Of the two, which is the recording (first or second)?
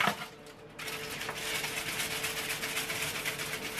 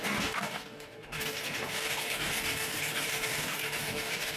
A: first